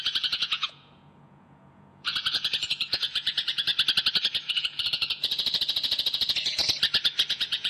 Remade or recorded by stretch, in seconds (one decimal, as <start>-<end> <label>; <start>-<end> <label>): 0.0-3.7 remade; 3.7-4.3 recorded; 4.3-6.6 remade; 6.6-7.3 recorded; 7.3-7.7 remade